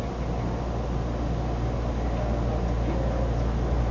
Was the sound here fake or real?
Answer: real